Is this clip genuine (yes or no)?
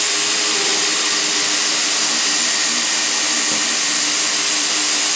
no